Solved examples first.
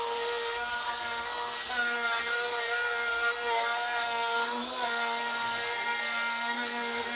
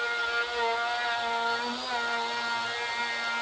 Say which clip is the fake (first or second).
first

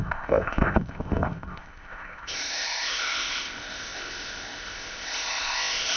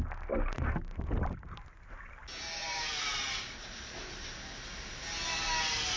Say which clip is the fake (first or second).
first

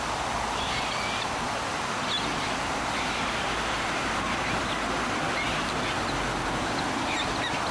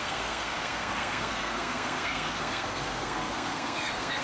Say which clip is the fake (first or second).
second